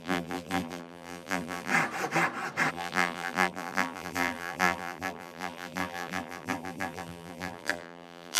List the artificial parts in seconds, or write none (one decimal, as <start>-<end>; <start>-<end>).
0.0-1.7; 2.7-8.4